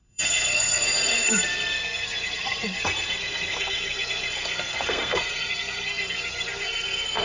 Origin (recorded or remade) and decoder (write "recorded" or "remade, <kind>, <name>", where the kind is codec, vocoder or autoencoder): remade, codec, SNAC